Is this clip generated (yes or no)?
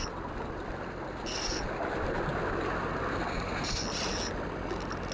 no